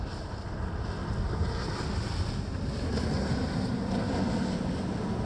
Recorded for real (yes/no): yes